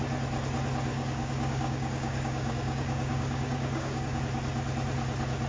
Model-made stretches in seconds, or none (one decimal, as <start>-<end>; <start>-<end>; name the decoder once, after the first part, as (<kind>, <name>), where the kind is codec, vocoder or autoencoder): 0.9-4.2 (codec, DAC)